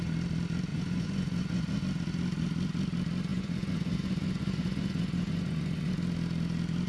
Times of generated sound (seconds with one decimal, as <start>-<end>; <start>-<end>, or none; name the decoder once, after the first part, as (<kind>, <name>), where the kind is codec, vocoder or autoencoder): 0.7-1.8 (vocoder, Vocos); 3.3-5.9

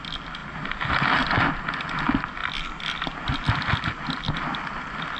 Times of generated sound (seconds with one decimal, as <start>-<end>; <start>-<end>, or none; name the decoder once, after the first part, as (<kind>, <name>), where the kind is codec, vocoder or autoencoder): none